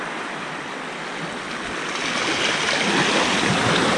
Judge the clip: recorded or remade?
recorded